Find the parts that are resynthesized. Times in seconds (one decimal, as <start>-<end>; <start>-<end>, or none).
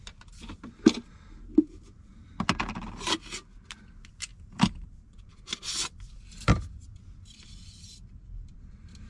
4.3-6.3